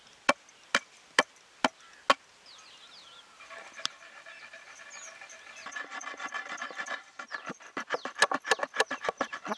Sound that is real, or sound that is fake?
real